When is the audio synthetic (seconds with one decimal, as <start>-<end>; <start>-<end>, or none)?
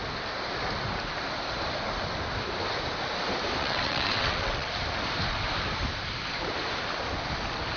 3.6-4.7